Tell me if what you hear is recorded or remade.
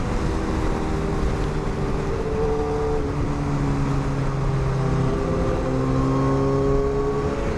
recorded